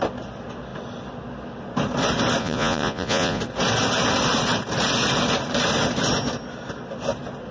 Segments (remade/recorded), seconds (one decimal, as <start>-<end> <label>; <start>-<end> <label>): 0.0-2.4 recorded; 2.4-3.4 remade; 3.4-7.5 recorded